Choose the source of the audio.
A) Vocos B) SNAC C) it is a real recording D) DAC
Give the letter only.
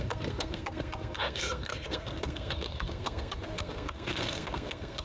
B